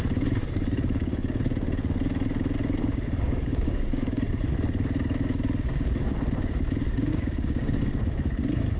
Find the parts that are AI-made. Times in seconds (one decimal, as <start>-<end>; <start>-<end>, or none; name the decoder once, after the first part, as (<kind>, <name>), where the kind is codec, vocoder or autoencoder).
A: 0.4-1.4 (codec, DAC); 2.8-4.4; 7.1-7.8